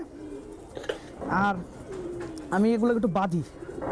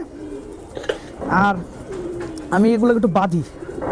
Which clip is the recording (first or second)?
first